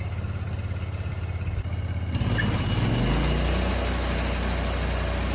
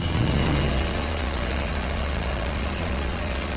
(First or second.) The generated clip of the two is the second